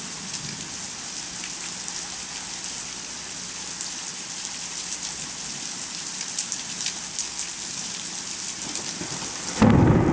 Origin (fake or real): real